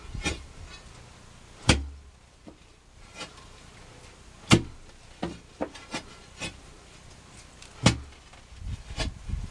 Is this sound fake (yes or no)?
no